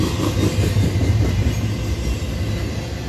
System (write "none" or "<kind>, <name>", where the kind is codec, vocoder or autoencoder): none